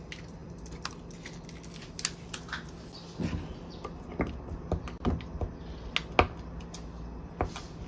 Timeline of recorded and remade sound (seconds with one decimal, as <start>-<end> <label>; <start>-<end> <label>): 0.0-7.9 recorded

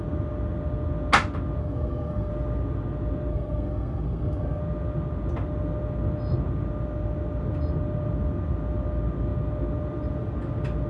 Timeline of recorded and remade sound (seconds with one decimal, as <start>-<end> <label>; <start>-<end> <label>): 0.0-1.6 recorded; 1.6-2.3 remade; 2.3-3.3 recorded; 3.3-4.6 remade; 4.6-10.9 recorded

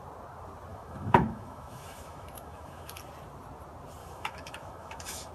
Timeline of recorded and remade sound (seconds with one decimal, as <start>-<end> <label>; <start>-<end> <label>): 0.0-0.7 recorded; 0.7-3.0 remade; 3.0-4.0 recorded; 4.0-5.3 remade

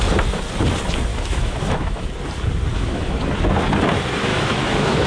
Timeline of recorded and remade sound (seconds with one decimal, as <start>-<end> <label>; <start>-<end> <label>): 0.0-1.1 recorded; 1.1-2.1 remade; 2.1-2.7 recorded; 2.7-3.2 remade; 3.2-4.3 recorded; 4.3-5.1 remade

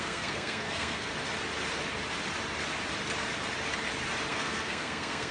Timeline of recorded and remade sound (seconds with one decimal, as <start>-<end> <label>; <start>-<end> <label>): 0.0-1.1 remade; 1.1-4.3 recorded; 4.3-5.3 remade